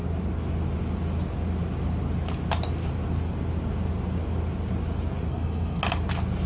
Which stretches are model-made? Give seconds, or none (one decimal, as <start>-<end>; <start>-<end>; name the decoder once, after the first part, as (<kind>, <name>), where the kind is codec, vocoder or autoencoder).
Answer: 5.3-5.8 (codec, SNAC)